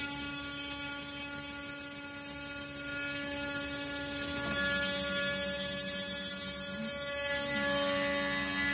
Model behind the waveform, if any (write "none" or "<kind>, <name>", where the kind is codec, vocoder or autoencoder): none